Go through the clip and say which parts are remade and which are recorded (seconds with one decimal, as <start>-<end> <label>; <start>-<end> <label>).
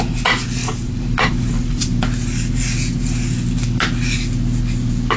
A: 0.0-0.6 recorded; 0.6-1.8 remade; 1.8-5.2 recorded